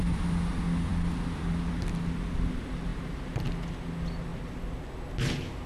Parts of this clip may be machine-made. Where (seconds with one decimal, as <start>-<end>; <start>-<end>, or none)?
2.9-3.4; 4.3-5.0